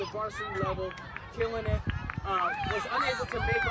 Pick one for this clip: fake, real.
real